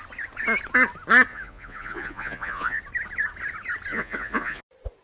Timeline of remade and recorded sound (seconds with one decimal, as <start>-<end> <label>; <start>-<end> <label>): 0.0-1.3 recorded; 1.3-2.8 remade; 2.8-3.9 recorded; 3.9-4.6 remade; 4.6-5.0 recorded